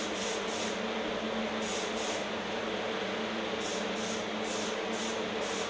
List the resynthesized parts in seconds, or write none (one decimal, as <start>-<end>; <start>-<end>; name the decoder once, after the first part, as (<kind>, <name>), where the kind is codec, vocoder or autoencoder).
1.7-2.6 (vocoder, BigVGAN v2)